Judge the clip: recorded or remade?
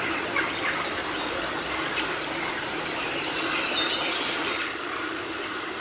recorded